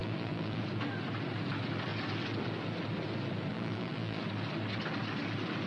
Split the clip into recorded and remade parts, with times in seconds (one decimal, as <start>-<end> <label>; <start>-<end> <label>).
0.0-0.6 remade; 0.6-3.5 recorded; 3.5-4.2 remade; 4.2-5.7 recorded